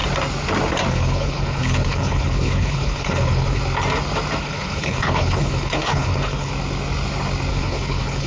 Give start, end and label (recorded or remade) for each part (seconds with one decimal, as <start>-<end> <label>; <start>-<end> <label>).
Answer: 0.0-0.9 recorded; 0.9-3.6 remade; 3.6-4.4 recorded; 4.4-6.5 remade; 6.5-7.5 recorded; 7.5-8.3 remade